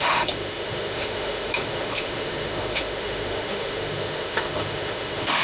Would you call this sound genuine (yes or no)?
no